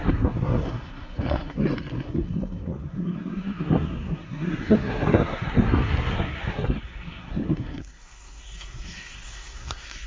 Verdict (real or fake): fake